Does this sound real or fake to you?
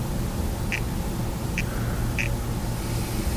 real